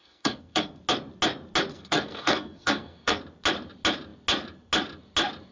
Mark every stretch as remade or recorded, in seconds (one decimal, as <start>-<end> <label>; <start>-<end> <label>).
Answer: 0.0-0.8 remade; 0.8-1.7 recorded; 1.7-3.2 remade; 3.2-5.5 recorded

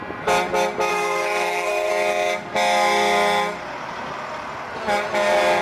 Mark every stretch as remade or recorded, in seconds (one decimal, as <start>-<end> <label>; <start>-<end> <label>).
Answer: 0.0-0.9 recorded; 0.9-1.9 remade; 1.9-5.6 recorded